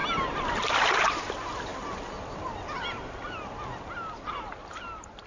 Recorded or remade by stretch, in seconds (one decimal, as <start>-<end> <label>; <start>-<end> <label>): 0.0-5.3 recorded